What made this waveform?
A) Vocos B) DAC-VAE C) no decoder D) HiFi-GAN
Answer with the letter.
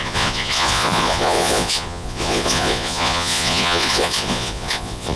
A